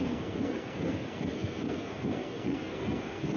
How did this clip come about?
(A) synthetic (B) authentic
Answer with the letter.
A